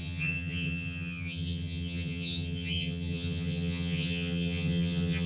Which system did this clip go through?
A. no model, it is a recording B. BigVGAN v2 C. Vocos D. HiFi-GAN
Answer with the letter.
D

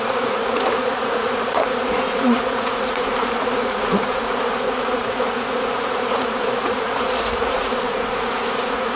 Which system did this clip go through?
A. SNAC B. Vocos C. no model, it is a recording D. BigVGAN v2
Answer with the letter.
B